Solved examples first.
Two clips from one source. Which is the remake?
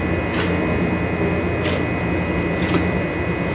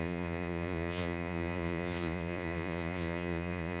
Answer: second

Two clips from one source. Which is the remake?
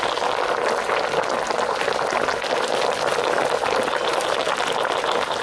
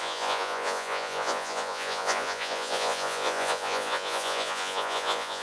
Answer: second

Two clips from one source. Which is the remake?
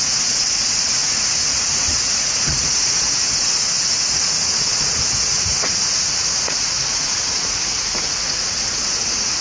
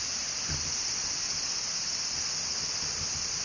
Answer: first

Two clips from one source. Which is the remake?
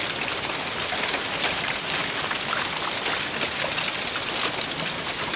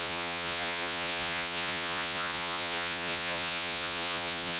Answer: second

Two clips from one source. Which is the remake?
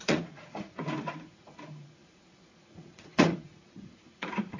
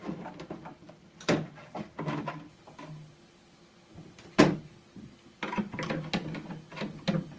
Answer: first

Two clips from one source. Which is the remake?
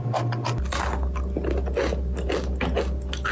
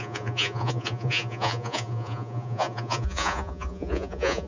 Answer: second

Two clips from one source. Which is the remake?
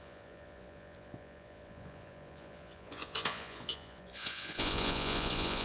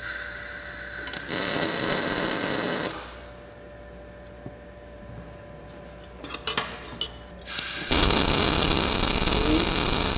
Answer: first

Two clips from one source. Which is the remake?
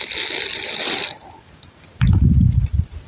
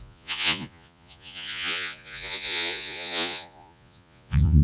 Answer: second